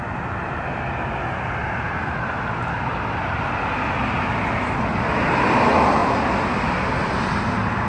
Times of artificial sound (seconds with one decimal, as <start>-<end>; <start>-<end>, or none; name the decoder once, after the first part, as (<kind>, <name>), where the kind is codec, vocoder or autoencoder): 1.6-3.4 (vocoder, BigVGAN v2)